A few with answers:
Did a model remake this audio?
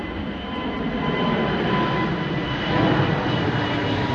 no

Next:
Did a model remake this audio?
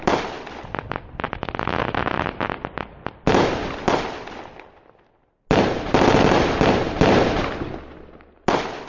no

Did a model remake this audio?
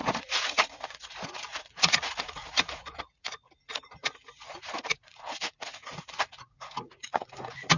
yes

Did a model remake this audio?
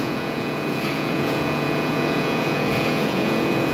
yes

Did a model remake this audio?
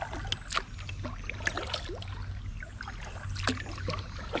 no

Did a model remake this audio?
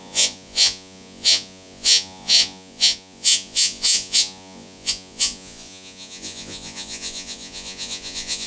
yes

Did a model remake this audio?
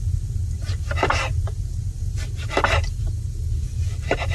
no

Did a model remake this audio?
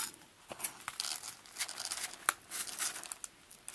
no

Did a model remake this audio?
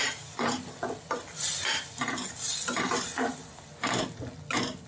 no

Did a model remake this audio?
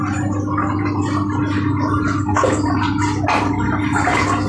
no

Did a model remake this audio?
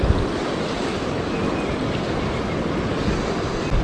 no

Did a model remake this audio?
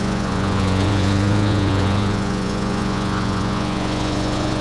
yes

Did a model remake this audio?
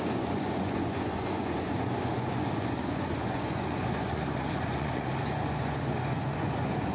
yes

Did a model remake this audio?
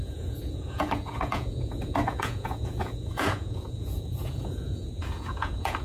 yes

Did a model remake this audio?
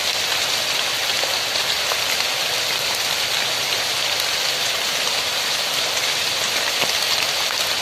no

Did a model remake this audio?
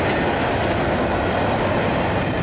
no